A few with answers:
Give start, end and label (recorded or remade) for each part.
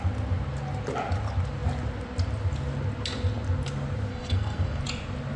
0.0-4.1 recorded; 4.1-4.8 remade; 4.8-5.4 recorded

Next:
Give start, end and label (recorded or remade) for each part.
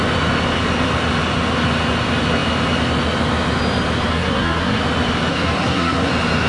0.0-4.1 recorded; 4.1-4.8 remade; 4.8-5.3 recorded; 5.3-6.1 remade; 6.1-6.5 recorded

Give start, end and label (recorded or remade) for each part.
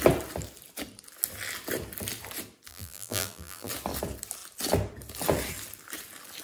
0.0-2.7 recorded; 2.7-3.7 remade; 3.7-6.4 recorded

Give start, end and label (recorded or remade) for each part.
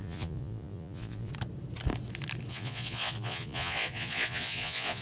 0.0-1.3 remade; 1.3-2.5 recorded; 2.5-5.0 remade